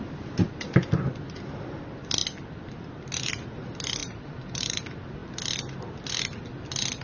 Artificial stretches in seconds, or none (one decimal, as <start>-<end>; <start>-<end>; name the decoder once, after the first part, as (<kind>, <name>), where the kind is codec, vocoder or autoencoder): 4.0-4.8 (vocoder, BigVGAN v2)